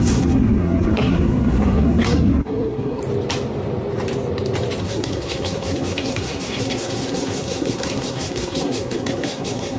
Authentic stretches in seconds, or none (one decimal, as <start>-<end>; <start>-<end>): 3.0-4.8